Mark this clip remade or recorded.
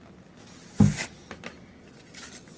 recorded